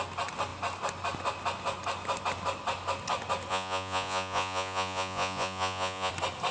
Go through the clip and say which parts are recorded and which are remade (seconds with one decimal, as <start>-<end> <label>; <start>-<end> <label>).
0.0-3.5 recorded; 3.5-6.1 remade; 6.1-6.5 recorded